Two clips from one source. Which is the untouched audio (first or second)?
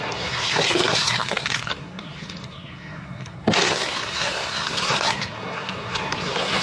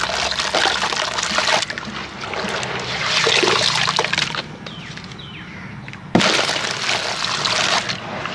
second